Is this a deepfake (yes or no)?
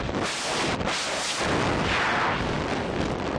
no